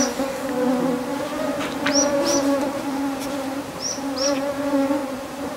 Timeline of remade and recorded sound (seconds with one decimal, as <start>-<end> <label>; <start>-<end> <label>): 0.0-1.1 recorded; 1.1-4.5 remade; 4.5-5.0 recorded; 5.0-5.6 remade

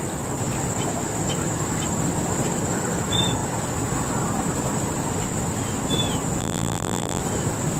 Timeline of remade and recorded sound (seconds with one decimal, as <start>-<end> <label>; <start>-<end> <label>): 0.0-6.4 recorded; 6.4-7.2 remade; 7.2-7.8 recorded

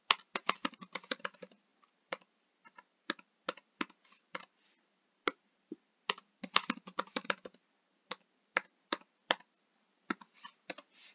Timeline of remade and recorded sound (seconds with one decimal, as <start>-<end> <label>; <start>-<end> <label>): 0.0-5.4 remade; 5.4-7.0 recorded; 7.0-11.1 remade

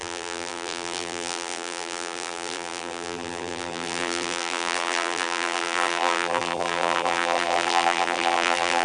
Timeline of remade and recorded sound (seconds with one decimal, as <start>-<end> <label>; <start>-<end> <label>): 0.0-8.8 remade

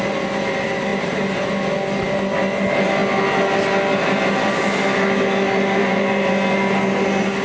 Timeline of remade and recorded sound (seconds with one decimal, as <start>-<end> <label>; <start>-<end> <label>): 0.0-0.9 recorded; 0.9-1.4 remade; 1.4-5.8 recorded; 5.8-6.3 remade; 6.3-7.4 recorded

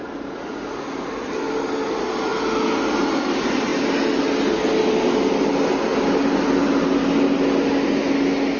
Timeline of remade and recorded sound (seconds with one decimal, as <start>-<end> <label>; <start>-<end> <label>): 0.0-8.6 recorded

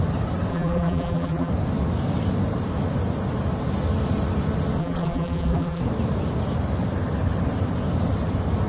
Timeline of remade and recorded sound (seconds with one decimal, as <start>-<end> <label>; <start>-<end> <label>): 0.0-0.5 recorded; 0.5-1.5 remade; 1.5-4.8 recorded; 4.8-5.8 remade; 5.8-8.7 recorded